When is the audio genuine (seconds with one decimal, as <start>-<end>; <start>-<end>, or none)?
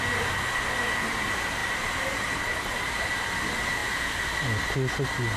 0.0-1.6; 2.9-5.4